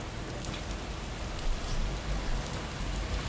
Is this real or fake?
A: real